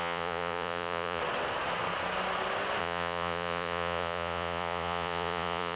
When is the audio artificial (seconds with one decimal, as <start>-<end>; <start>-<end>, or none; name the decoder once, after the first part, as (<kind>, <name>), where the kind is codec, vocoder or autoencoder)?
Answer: 0.0-1.2 (vocoder, Vocos); 2.8-5.8